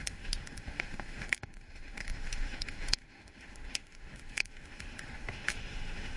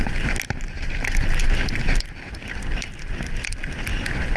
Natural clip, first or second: second